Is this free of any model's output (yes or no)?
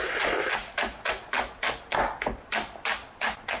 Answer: yes